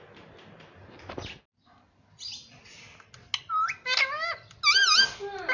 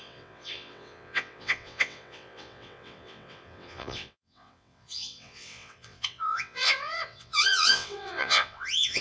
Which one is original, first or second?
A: first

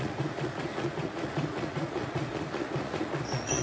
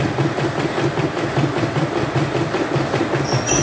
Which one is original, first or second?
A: second